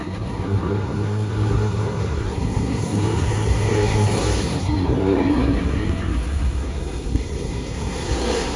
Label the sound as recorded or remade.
remade